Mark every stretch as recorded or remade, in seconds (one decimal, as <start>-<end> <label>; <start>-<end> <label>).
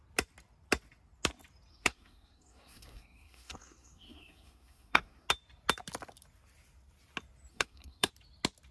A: 0.0-1.7 recorded; 1.7-5.3 remade; 5.3-7.5 recorded; 7.5-8.1 remade; 8.1-8.7 recorded